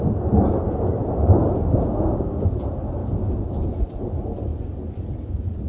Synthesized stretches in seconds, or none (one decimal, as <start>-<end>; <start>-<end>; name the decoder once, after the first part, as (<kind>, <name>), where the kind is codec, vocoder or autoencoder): 1.0-2.6 (codec, DAC); 3.0-3.6